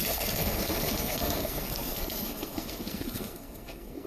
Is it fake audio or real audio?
fake